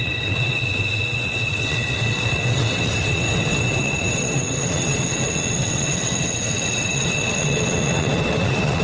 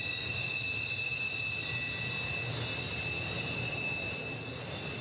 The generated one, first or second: first